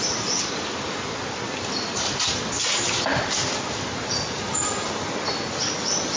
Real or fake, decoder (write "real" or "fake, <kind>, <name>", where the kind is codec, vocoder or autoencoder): real